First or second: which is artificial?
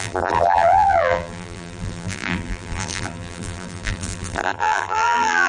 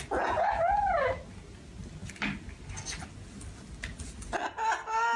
first